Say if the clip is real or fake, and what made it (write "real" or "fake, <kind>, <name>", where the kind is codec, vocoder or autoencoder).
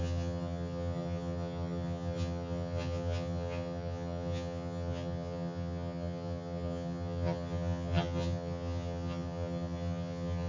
fake, vocoder, HiFi-GAN